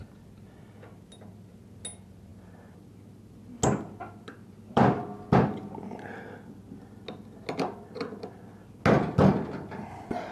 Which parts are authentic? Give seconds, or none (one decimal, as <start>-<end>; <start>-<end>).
0.0-10.3